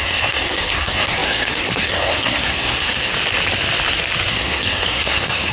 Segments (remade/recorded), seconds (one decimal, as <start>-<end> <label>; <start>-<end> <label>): 0.0-3.1 remade; 3.1-4.3 recorded; 4.3-5.5 remade